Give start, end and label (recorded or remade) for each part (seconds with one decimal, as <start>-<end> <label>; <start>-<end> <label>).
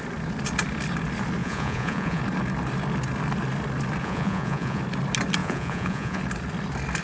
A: 0.0-1.4 recorded; 1.4-2.2 remade; 2.2-4.0 recorded; 4.0-4.8 remade; 4.8-5.4 recorded; 5.4-6.2 remade; 6.2-7.0 recorded